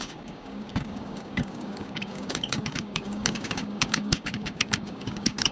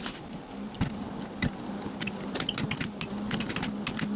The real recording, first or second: second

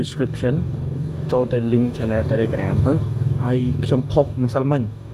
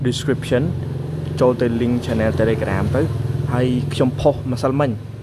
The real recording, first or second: second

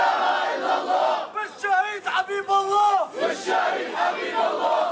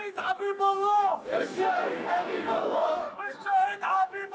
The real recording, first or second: first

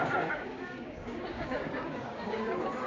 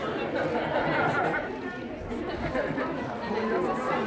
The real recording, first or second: second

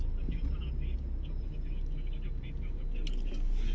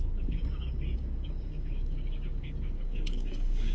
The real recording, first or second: first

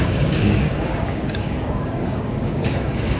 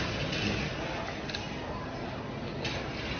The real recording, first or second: second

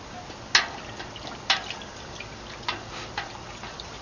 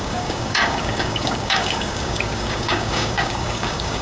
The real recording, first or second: first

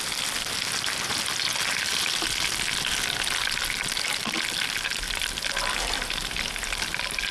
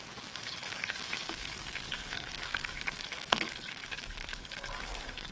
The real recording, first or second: first